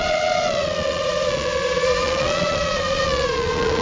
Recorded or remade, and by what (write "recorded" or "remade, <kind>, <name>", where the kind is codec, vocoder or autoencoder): remade, vocoder, Vocos